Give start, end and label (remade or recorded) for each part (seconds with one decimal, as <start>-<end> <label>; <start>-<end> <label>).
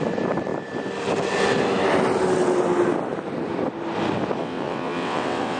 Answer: 0.0-4.4 recorded; 4.4-5.6 remade